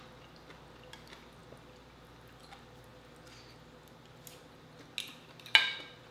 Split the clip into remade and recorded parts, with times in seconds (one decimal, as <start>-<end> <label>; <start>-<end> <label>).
0.0-6.1 recorded